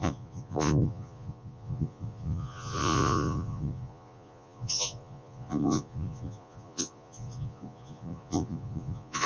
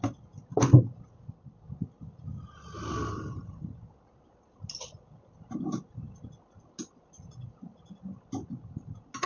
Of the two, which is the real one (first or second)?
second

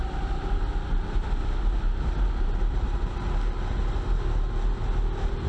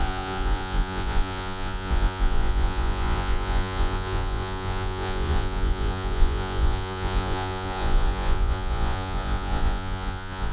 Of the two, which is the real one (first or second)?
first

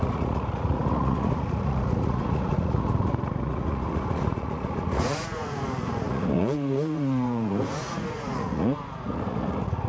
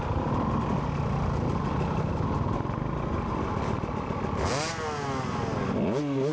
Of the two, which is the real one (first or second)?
second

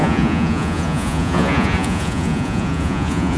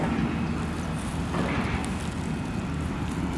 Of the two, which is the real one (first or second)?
second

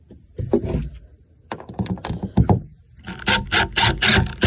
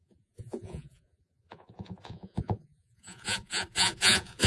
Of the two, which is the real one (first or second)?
first